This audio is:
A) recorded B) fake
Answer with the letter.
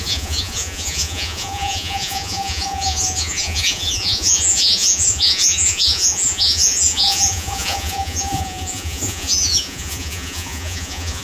B